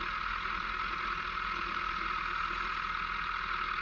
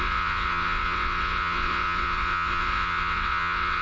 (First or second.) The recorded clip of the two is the first